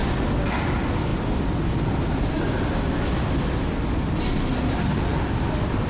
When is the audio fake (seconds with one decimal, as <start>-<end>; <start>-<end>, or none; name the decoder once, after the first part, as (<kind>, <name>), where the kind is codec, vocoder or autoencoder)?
none